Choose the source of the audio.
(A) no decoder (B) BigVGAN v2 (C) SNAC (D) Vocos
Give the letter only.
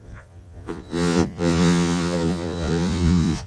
D